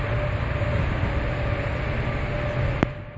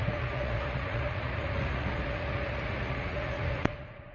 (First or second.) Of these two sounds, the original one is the first